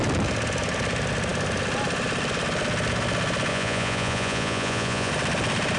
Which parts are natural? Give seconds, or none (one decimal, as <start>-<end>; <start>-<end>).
0.0-3.5; 5.1-5.8